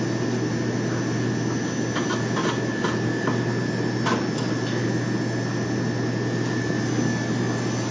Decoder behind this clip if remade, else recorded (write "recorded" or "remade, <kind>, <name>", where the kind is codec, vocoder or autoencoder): recorded